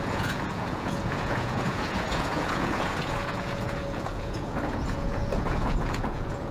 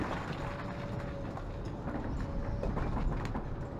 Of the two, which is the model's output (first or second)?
first